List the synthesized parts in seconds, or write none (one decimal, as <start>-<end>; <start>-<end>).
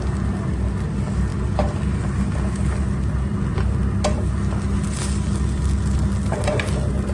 none